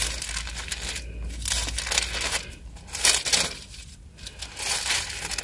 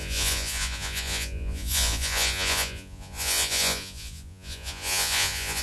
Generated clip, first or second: second